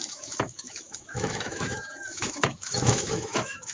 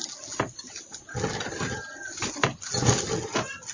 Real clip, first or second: second